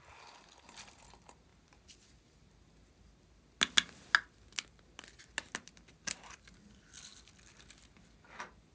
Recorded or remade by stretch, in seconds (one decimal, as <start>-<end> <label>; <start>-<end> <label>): 0.0-8.7 recorded